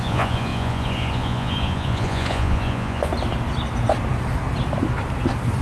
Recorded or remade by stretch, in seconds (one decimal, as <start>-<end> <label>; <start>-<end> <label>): 0.0-3.1 remade; 3.1-5.6 recorded